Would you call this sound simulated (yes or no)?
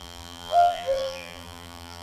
yes